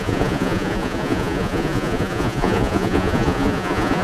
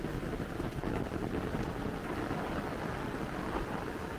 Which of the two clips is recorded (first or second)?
second